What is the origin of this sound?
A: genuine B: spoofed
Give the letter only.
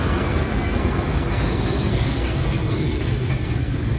B